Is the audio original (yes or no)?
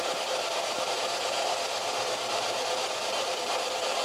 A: no